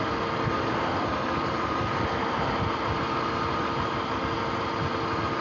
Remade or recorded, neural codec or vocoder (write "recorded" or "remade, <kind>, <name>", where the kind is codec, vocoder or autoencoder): recorded